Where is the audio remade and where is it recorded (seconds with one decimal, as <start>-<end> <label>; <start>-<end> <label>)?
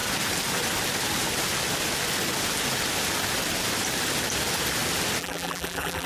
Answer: 0.0-5.2 recorded; 5.2-6.1 remade